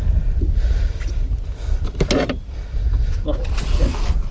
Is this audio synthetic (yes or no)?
no